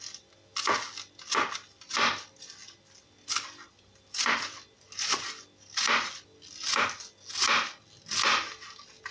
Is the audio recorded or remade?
recorded